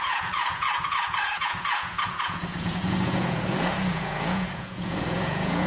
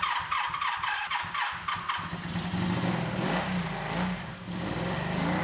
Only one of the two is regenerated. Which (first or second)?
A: first